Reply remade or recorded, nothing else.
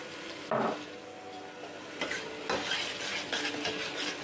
recorded